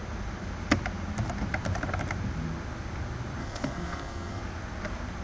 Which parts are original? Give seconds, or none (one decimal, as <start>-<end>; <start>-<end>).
0.0-3.4; 4.4-5.2